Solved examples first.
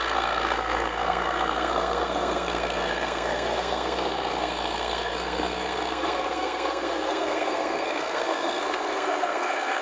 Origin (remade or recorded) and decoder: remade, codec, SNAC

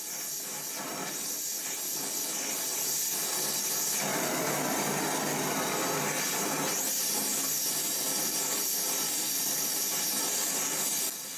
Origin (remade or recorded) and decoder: recorded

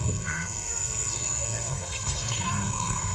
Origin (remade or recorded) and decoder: remade, codec, SNAC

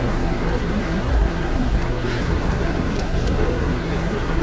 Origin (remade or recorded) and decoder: remade, codec, SNAC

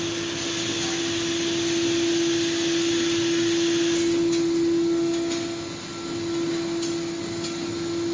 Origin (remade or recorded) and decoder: recorded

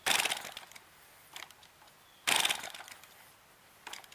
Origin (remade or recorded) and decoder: recorded